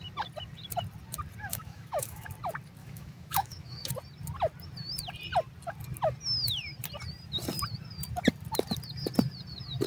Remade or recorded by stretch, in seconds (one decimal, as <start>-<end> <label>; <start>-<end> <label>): 0.0-1.5 recorded; 1.5-2.3 remade; 2.3-2.8 recorded; 2.8-3.9 remade; 3.9-9.9 recorded